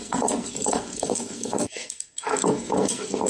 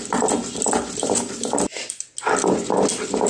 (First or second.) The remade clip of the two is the first